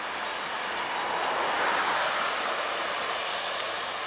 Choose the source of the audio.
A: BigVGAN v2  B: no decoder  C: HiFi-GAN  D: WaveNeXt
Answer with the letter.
B